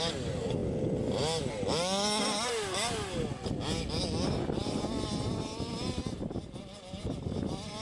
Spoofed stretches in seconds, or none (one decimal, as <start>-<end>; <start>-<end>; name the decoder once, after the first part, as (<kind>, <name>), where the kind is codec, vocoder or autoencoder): none